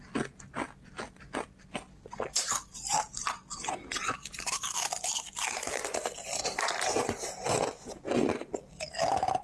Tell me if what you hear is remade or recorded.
recorded